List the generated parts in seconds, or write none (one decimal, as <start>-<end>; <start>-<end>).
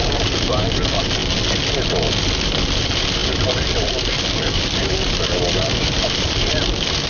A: 0.0-1.2; 2.2-7.1